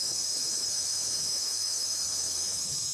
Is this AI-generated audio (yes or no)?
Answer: yes